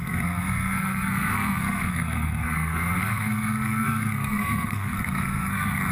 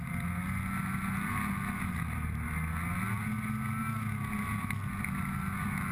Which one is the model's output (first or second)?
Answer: first